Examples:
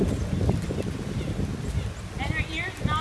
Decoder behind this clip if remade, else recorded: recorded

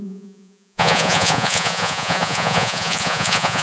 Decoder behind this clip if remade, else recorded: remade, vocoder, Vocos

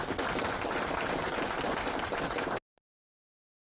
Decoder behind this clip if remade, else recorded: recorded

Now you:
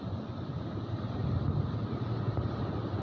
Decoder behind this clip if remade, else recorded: recorded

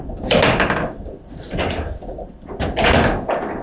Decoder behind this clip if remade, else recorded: recorded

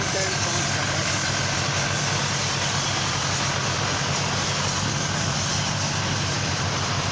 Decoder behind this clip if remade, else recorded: recorded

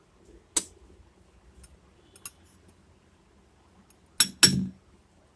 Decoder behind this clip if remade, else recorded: recorded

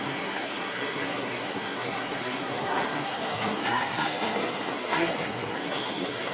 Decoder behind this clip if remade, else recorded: remade, codec, SNAC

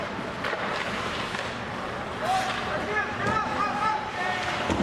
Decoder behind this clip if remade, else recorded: recorded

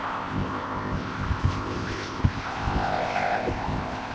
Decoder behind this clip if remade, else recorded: remade, codec, ZipCodec